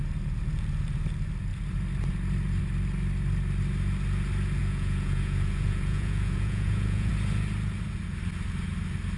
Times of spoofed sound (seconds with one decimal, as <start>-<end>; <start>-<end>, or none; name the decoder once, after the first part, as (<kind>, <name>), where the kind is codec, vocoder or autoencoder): 4.6-7.1 (vocoder, Vocos)